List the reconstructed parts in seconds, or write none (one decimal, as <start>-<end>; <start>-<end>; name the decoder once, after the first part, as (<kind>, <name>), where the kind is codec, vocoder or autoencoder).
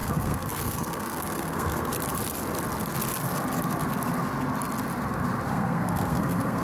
0.0-1.9 (codec, SNAC); 5.5-6.6